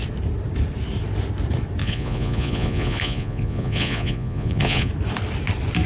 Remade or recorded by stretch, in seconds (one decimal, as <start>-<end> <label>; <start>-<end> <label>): 0.0-1.8 recorded; 1.8-4.9 remade; 4.9-5.9 recorded